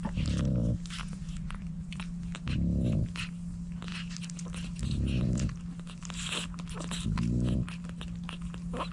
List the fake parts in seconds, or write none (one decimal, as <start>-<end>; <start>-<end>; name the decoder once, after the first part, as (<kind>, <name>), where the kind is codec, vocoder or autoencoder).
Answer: 1.0-2.0 (vocoder, Vocos)